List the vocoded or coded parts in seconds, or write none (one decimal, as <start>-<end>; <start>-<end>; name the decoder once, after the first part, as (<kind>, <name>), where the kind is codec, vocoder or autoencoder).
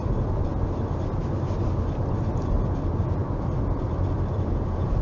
none